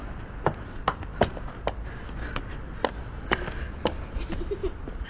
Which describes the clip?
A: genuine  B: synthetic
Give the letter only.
A